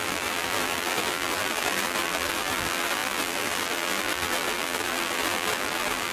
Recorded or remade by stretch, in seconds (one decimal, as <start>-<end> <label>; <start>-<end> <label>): 0.0-6.1 remade